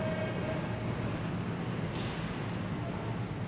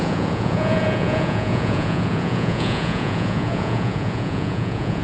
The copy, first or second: second